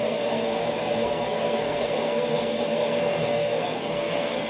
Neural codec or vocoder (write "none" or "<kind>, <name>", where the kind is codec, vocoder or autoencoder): codec, SNAC